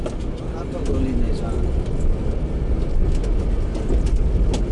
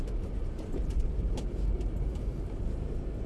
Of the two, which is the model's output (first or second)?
second